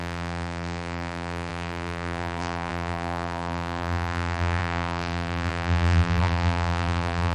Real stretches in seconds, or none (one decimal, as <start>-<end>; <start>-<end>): none